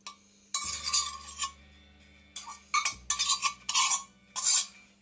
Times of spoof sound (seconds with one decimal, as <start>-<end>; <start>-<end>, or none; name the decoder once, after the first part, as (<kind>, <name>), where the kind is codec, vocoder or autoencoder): none